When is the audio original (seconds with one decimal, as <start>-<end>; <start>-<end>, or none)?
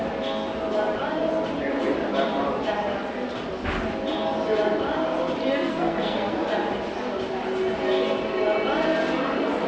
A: 0.0-5.7; 6.4-9.7